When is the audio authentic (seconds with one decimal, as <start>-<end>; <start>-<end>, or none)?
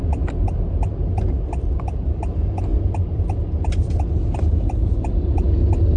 0.0-2.7; 5.1-6.0